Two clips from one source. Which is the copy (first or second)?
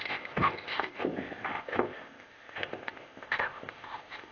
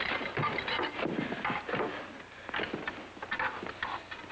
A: first